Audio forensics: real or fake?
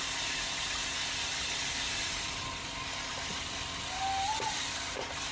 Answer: fake